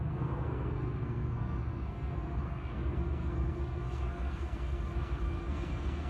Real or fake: fake